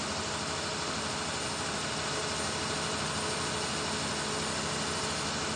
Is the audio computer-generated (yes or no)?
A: no